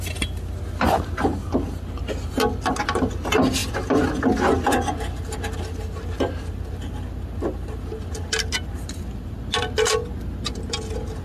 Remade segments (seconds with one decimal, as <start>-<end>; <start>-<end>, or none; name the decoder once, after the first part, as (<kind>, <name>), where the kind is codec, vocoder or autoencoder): none